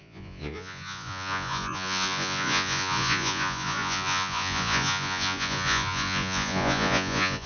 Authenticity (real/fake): fake